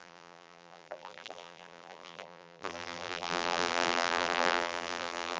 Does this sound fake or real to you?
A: fake